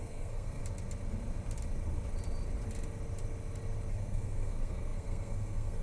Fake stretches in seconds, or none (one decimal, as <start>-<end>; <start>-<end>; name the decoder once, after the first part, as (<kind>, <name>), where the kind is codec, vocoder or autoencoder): 0.0-0.6 (codec, SNAC); 3.9-5.8